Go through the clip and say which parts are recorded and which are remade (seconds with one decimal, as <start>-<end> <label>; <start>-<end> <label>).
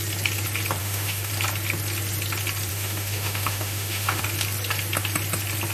0.0-0.8 recorded; 0.8-1.3 remade; 1.3-2.7 recorded; 2.7-4.2 remade; 4.2-5.7 recorded